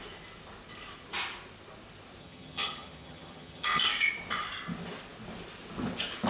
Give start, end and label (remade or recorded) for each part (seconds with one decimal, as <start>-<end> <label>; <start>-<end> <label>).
0.0-2.2 recorded; 2.2-3.8 remade; 3.8-6.3 recorded